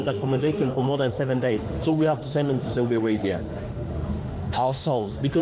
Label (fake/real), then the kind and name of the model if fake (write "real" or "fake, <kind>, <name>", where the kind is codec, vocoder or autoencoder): fake, autoencoder, DAC-VAE